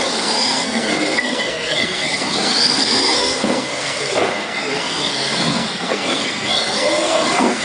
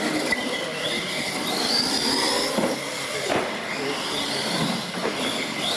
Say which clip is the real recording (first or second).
second